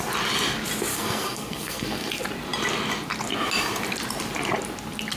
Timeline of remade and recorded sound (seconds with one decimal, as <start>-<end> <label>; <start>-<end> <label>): 0.0-0.9 recorded; 0.9-2.1 remade; 2.1-5.2 recorded

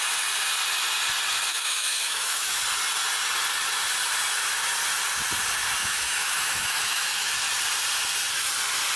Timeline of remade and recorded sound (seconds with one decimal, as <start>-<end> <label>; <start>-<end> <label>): 0.0-1.5 recorded; 1.5-2.6 remade; 2.6-5.8 recorded; 5.8-7.3 remade; 7.3-9.0 recorded

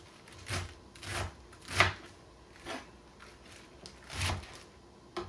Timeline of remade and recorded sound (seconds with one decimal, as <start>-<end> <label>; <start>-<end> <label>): 0.0-5.3 recorded